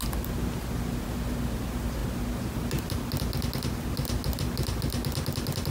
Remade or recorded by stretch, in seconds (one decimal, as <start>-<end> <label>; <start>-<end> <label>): 0.0-5.7 recorded